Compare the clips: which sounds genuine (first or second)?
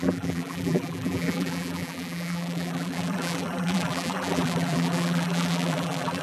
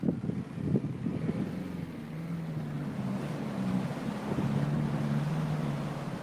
second